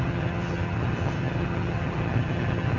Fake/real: fake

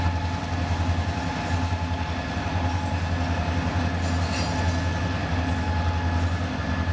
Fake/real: real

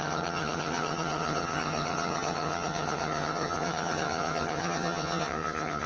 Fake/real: fake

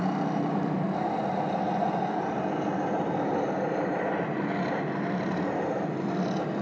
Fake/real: real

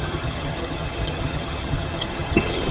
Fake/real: fake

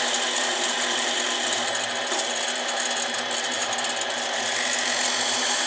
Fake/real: real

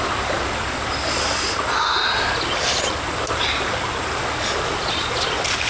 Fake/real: real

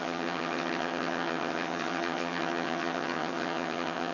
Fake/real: fake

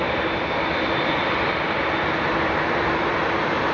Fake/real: real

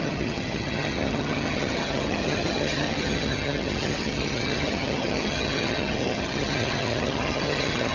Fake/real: fake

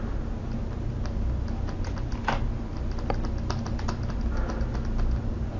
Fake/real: real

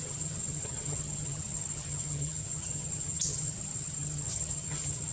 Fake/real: fake